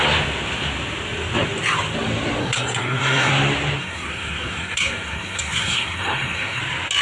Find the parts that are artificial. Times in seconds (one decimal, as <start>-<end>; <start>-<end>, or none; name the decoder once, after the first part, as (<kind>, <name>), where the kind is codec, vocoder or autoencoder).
2.4-3.3 (codec, SNAC); 3.8-6.6